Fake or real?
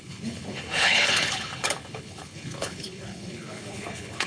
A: fake